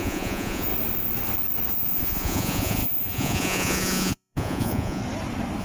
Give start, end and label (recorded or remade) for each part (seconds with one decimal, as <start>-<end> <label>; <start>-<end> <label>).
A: 0.0-0.7 remade; 0.7-1.7 recorded; 1.7-5.0 remade; 5.0-5.6 recorded

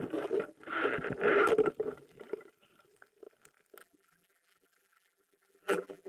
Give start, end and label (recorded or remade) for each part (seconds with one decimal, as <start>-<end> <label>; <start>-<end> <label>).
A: 0.0-3.8 recorded; 3.8-6.1 remade

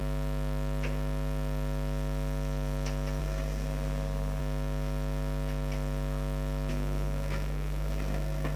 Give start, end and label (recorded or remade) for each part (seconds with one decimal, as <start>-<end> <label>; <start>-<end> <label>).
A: 0.0-3.2 recorded; 3.2-4.4 remade; 4.4-6.7 recorded; 6.7-8.6 remade

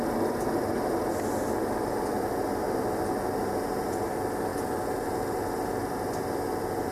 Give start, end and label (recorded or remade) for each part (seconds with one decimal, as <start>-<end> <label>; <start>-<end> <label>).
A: 0.0-6.9 recorded

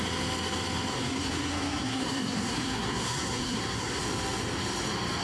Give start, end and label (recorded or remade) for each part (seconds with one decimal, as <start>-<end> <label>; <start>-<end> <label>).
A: 0.0-0.9 recorded; 0.9-4.0 remade; 4.0-5.2 recorded

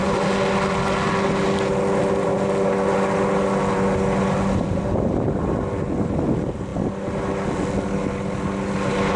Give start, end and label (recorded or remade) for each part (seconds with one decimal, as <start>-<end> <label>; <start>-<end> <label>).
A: 0.0-9.2 recorded

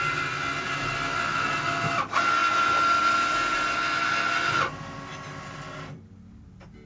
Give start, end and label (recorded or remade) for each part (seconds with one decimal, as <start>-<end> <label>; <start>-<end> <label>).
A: 0.0-6.9 recorded

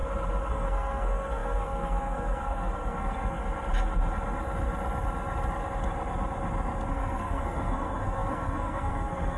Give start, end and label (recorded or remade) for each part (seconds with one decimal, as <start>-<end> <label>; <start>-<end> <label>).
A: 0.0-0.5 recorded; 0.5-3.4 remade; 3.4-6.9 recorded; 6.9-9.4 remade